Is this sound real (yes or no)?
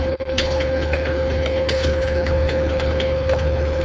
no